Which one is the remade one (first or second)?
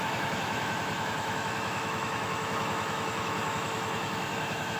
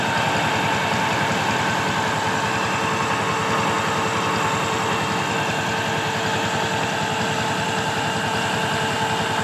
first